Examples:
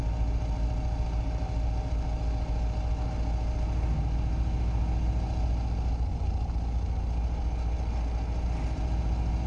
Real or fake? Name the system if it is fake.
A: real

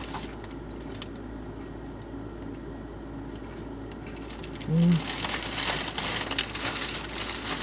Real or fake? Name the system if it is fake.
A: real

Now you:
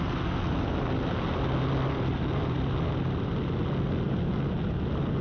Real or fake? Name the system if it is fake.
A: real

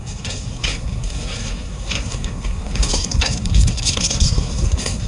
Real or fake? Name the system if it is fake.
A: fake, codec, SNAC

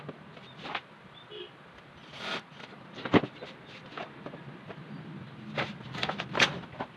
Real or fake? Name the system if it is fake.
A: real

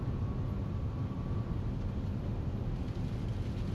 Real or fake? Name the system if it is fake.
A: real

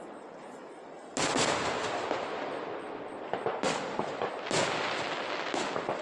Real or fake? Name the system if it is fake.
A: real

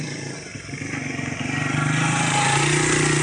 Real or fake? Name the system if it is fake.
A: real